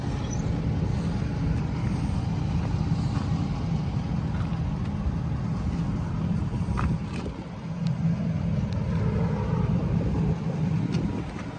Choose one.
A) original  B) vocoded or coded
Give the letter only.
A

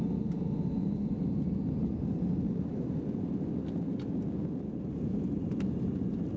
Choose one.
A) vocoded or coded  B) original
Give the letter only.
B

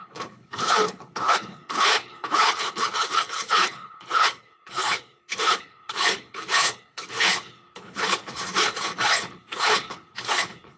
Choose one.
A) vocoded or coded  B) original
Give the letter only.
A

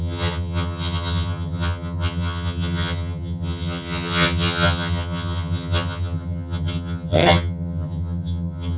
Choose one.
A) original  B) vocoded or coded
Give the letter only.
B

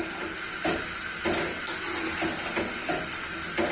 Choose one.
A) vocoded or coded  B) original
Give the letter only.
B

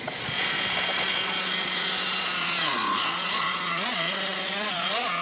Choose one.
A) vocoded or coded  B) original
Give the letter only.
A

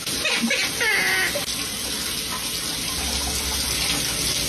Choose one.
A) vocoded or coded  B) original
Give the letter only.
B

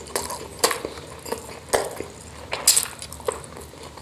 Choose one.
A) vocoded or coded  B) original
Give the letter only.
B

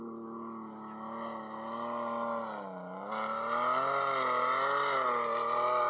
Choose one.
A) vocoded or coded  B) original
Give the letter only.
B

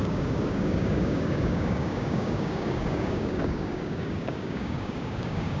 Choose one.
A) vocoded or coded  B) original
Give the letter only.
A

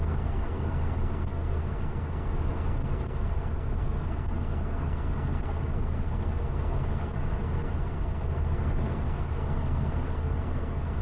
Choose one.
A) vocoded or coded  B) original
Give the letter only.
A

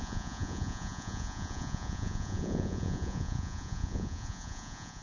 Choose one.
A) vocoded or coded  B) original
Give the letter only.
A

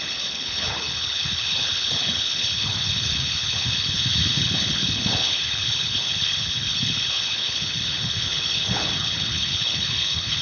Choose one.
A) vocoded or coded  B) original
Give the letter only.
A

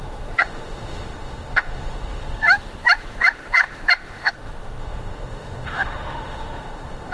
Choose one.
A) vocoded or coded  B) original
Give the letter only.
A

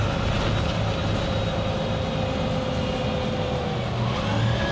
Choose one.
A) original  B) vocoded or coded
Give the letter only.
A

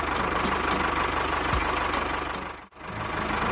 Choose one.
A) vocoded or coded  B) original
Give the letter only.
B